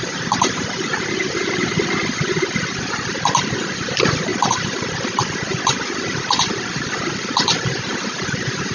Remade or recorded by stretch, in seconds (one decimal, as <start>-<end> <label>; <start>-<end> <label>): 0.0-8.7 remade